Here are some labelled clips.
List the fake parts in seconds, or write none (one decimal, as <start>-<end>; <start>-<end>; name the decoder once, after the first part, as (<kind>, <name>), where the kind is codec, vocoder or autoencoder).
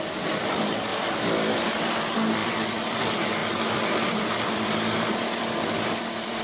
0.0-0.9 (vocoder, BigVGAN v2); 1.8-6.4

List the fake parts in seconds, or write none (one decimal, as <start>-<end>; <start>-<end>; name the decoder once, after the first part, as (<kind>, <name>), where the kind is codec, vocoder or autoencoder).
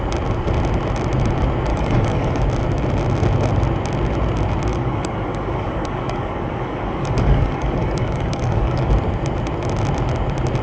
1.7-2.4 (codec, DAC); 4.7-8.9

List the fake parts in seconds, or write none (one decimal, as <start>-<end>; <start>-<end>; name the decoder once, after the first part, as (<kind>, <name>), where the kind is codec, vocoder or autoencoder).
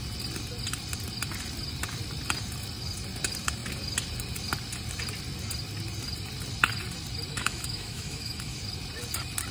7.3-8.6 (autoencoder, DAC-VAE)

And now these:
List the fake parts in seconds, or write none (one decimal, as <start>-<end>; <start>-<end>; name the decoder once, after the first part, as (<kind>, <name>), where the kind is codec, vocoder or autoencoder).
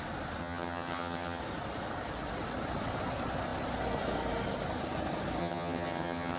0.4-1.4 (vocoder, HiFi-GAN); 5.4-6.4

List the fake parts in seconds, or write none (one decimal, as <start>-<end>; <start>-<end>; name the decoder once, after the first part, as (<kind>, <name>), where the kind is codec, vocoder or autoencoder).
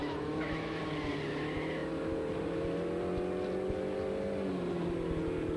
0.0-0.8 (autoencoder, DAC-VAE)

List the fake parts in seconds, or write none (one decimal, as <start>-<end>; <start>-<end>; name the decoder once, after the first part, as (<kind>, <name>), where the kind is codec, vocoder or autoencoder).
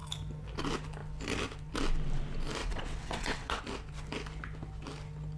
2.6-3.6 (vocoder, WaveNeXt)